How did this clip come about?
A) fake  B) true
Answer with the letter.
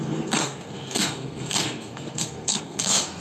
A